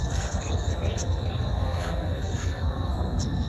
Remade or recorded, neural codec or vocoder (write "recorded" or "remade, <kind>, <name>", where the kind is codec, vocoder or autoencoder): remade, codec, SNAC